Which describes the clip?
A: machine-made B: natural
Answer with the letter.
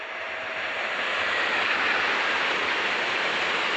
B